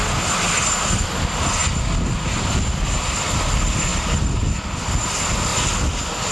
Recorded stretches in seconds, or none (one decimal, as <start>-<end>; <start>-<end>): 0.0-6.3